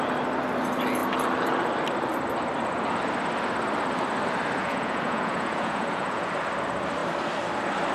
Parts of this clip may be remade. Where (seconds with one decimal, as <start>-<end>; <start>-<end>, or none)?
4.6-6.3